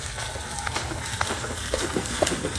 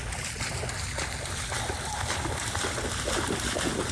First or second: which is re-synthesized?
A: first